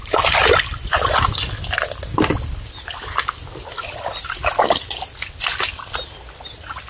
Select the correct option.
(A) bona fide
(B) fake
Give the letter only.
A